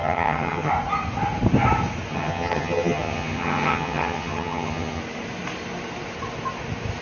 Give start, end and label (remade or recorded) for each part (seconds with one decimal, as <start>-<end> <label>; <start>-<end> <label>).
0.0-0.7 remade; 0.7-2.1 recorded; 2.1-5.0 remade; 5.0-7.0 recorded